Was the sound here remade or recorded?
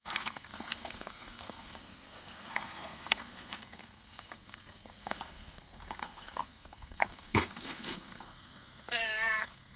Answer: remade